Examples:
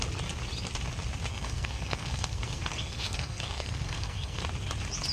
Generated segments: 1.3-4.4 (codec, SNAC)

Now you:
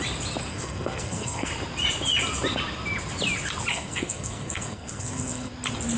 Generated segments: 0.5-1.5 (codec, SNAC); 3.7-5.5

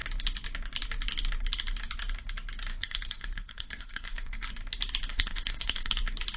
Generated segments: 2.7-4.5 (codec, SNAC); 5.1-6.0